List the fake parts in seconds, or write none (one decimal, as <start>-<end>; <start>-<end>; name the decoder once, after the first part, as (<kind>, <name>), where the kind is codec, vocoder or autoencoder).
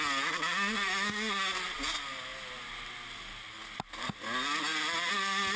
none